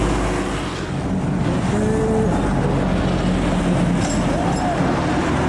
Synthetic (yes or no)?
no